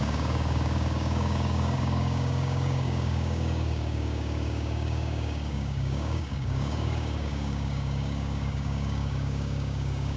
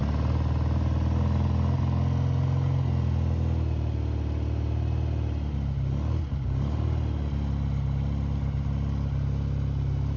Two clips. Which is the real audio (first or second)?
second